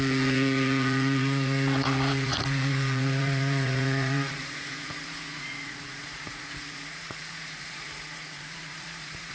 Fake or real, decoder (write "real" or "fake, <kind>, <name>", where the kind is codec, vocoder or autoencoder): fake, vocoder, Vocos